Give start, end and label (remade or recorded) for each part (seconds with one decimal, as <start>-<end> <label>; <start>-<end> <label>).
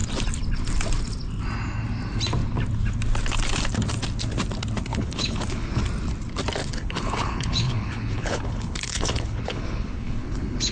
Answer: 0.0-4.9 recorded; 4.9-5.8 remade; 5.8-6.6 recorded; 6.6-10.7 remade